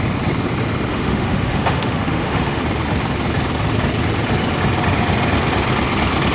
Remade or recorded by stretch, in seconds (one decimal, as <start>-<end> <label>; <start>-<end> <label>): 0.0-0.9 recorded; 0.9-2.6 remade; 2.6-6.3 recorded